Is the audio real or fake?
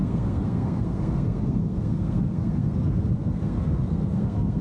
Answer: fake